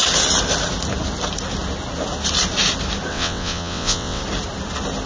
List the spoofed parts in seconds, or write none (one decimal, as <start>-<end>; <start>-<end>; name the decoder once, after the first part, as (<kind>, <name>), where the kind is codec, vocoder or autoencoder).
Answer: 3.1-4.2 (vocoder, WaveNeXt)